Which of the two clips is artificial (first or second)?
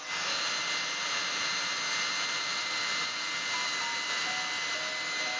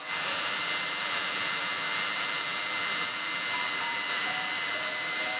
second